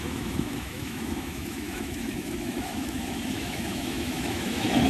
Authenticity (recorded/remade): remade